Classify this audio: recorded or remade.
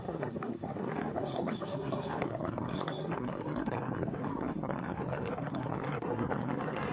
remade